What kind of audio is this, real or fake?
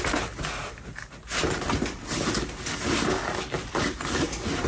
real